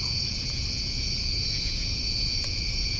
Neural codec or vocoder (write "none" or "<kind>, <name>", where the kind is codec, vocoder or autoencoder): vocoder, Vocos